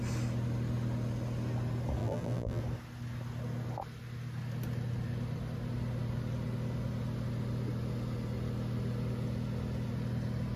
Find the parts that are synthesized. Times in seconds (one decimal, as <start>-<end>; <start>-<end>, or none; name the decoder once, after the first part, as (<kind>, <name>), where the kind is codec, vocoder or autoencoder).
2.0-2.6 (vocoder, BigVGAN v2)